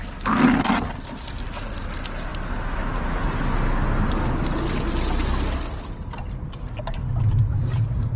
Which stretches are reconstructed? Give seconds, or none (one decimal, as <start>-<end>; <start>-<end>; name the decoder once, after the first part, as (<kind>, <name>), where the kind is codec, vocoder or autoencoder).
7.5-8.2 (vocoder, BigVGAN v2)